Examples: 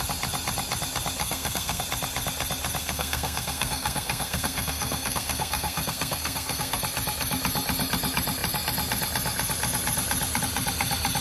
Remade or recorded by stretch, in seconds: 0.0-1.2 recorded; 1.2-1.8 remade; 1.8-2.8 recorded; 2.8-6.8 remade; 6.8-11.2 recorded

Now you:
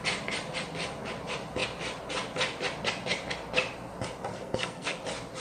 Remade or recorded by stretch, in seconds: 0.0-4.3 recorded; 4.3-5.0 remade; 5.0-5.4 recorded

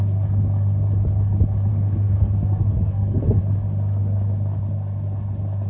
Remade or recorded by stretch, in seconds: 0.0-1.7 recorded; 1.7-3.4 remade; 3.4-5.7 recorded

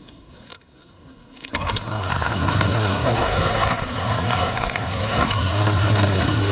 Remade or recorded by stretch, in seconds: 0.0-6.5 remade